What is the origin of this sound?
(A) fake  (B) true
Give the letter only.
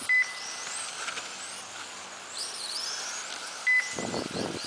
B